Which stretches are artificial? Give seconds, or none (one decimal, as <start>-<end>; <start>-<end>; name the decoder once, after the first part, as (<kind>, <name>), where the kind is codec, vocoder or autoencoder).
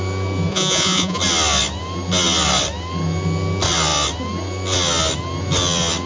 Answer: 0.5-1.2 (vocoder, Vocos)